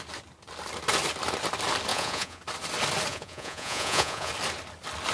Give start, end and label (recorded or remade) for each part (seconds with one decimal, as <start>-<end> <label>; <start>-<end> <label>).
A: 0.0-1.9 recorded; 1.9-2.4 remade; 2.4-3.1 recorded; 3.1-4.3 remade; 4.3-5.1 recorded